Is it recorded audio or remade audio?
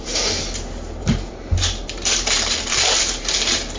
remade